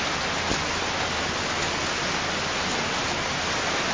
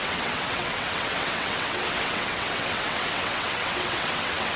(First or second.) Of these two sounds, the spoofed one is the second